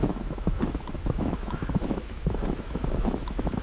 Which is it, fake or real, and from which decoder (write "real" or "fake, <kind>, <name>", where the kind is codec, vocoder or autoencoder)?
fake, autoencoder, DAC-VAE